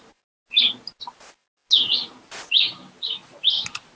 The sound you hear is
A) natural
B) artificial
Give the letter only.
A